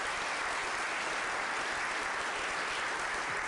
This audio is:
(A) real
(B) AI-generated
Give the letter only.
A